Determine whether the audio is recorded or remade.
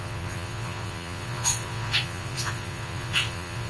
remade